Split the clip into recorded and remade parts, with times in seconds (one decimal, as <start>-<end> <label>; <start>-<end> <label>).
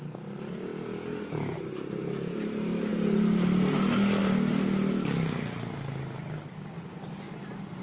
0.0-7.8 recorded